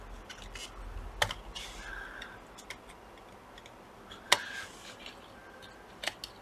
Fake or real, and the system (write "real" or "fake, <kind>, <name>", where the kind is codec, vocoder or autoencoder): real